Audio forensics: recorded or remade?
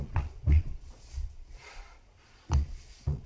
remade